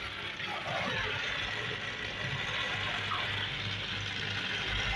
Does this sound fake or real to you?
real